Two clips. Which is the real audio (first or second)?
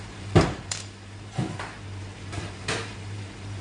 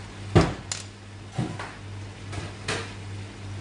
second